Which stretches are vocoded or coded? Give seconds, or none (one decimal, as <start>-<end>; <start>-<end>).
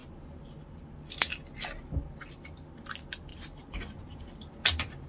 3.3-4.2